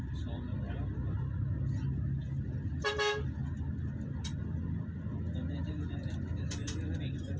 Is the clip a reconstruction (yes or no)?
no